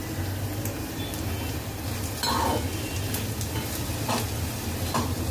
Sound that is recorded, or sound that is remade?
recorded